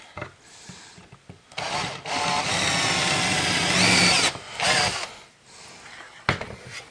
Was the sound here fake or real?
real